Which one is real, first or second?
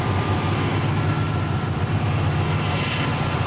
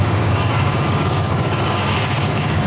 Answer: first